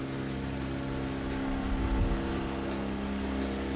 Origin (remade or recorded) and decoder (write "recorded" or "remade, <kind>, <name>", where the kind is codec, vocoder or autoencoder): recorded